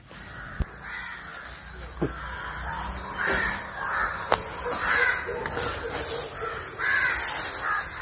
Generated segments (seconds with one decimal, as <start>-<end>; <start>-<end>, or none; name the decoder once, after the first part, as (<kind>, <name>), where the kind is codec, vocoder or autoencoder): none